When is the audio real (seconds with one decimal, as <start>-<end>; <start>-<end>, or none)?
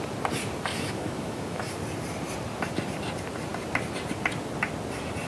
0.0-0.7; 1.6-5.3